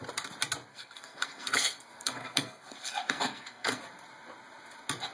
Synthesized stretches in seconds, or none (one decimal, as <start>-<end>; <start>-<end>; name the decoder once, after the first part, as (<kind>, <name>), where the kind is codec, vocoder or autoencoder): 0.7-3.8 (codec, SNAC)